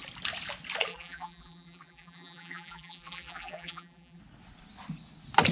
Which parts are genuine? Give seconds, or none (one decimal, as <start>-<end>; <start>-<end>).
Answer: 0.0-0.9; 4.2-5.5

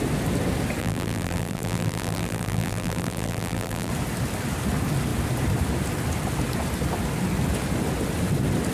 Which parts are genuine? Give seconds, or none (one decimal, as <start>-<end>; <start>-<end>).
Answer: 0.0-0.8; 3.9-8.7